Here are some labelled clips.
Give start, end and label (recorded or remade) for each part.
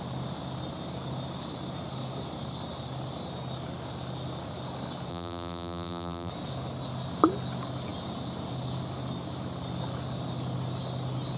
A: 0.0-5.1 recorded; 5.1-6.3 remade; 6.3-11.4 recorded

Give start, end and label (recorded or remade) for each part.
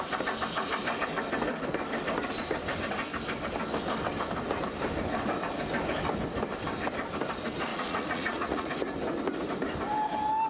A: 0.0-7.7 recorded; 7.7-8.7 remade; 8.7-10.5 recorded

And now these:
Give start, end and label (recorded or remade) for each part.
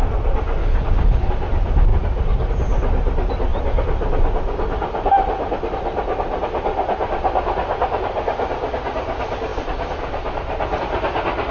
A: 0.0-0.6 recorded; 0.6-1.3 remade; 1.3-11.5 recorded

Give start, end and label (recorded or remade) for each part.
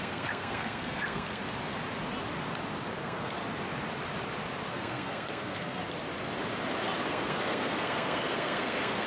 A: 0.0-1.4 remade; 1.4-3.0 recorded; 3.0-3.4 remade; 3.4-4.7 recorded; 4.7-5.8 remade; 5.8-7.1 recorded; 7.1-9.1 remade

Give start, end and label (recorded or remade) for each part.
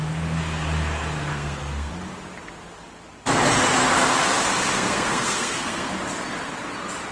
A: 0.0-1.3 recorded; 1.3-1.9 remade; 1.9-4.5 recorded; 4.5-5.9 remade; 5.9-7.1 recorded